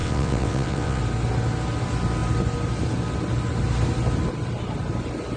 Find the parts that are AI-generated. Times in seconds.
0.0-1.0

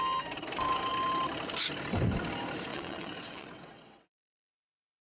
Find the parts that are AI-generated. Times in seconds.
2.7-4.5

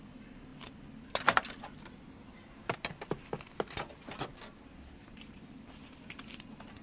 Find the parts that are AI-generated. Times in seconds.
none

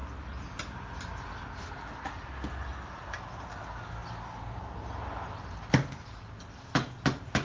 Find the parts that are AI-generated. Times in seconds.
none

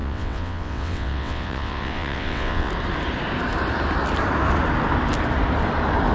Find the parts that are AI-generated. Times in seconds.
0.0-2.7